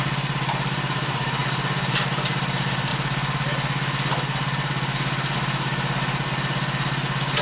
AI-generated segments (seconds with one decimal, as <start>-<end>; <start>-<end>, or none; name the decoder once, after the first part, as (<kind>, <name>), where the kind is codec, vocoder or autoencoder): 0.0-2.9 (vocoder, BigVGAN v2)